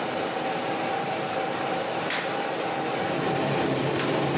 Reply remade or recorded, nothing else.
recorded